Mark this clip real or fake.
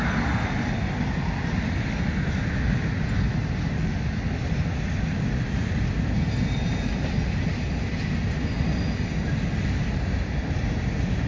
real